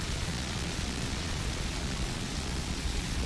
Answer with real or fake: fake